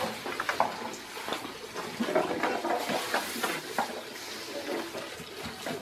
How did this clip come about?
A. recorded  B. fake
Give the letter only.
A